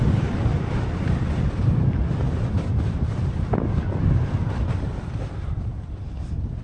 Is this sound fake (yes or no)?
no